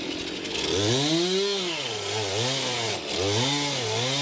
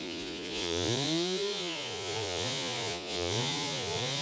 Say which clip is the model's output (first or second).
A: second